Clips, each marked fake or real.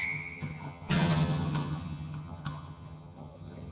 fake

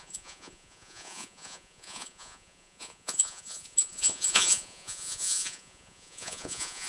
fake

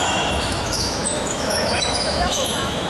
fake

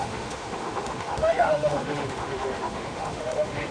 fake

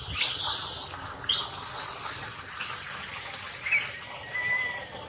real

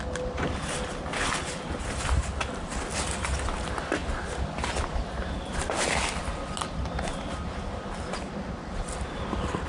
real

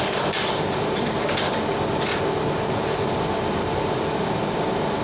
real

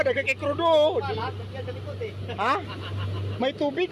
real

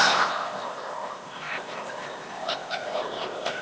fake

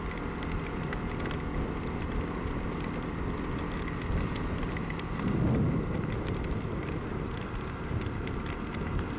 real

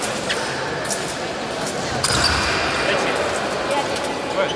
real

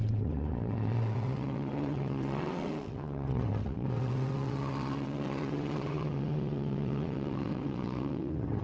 fake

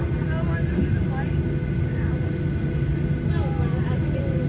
real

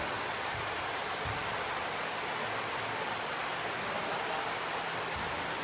real